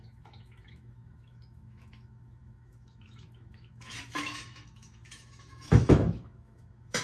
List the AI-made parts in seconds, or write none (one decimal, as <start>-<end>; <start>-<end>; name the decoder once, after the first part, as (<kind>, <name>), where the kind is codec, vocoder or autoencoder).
0.0-7.0 (autoencoder, DAC-VAE)